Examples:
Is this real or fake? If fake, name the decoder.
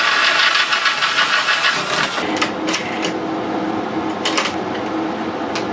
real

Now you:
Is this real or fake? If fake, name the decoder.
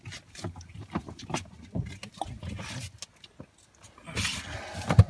real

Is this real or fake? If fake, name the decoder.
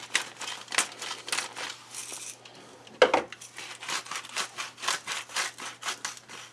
real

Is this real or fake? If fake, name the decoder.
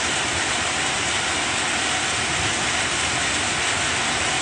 real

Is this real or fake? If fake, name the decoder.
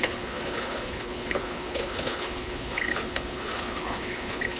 fake, codec, HILCodec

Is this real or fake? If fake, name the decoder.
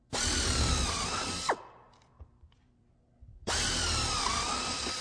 fake, vocoder, BigVGAN v2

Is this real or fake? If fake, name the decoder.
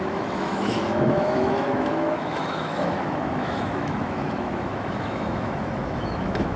fake, autoencoder, DAC-VAE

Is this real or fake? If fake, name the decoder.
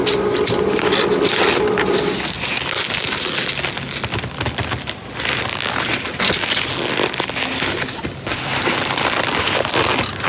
real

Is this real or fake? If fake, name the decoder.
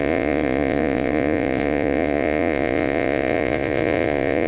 fake, vocoder, Vocos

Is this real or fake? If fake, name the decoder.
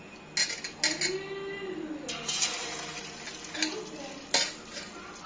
real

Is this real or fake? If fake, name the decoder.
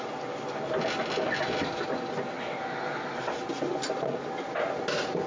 real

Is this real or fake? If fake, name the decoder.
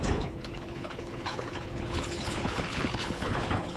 fake, codec, HILCodec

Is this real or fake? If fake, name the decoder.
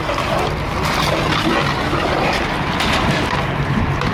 real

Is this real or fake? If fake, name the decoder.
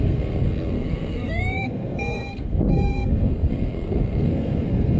fake, codec, SNAC